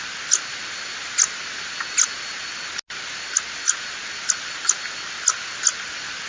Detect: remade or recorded recorded